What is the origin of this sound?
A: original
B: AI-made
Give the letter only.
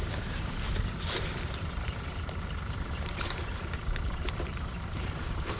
B